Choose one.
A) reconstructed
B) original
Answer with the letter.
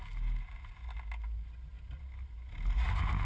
B